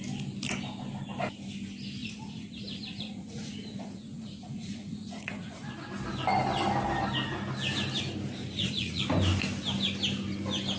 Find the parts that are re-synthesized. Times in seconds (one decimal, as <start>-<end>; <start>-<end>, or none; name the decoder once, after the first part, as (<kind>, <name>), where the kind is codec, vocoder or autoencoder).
2.0-5.7 (vocoder, Vocos); 8.4-9.0